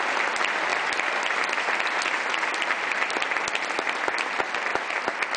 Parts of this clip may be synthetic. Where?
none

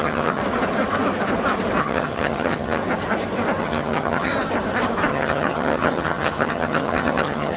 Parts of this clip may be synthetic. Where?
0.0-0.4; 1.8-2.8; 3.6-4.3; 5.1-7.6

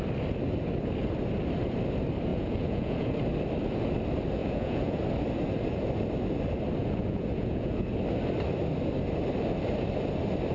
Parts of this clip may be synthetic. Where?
2.3-3.1; 4.4-5.0; 6.8-7.9